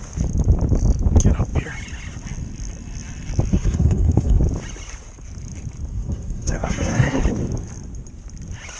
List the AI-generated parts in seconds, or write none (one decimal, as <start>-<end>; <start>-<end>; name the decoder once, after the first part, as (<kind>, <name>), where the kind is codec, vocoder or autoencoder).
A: 3.5-4.4 (codec, SNAC); 5.9-7.2